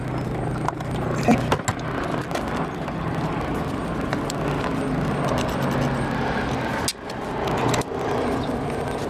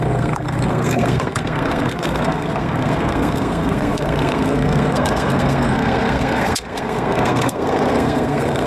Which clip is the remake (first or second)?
second